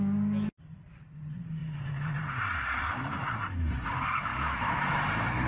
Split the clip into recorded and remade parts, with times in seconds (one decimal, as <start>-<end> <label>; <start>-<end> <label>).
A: 0.0-4.3 recorded; 4.3-4.9 remade; 4.9-5.5 recorded